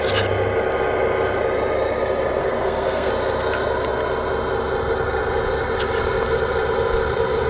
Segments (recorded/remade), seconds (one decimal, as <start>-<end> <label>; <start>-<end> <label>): 0.0-2.4 recorded; 2.4-3.1 remade; 3.1-7.5 recorded